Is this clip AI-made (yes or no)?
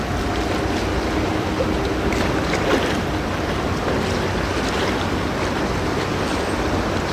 no